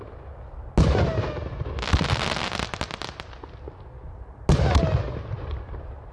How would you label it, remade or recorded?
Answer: recorded